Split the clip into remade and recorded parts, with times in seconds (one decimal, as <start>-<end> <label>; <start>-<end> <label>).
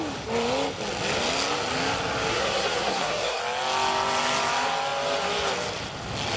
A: 0.0-2.3 recorded; 2.3-3.4 remade; 3.4-6.4 recorded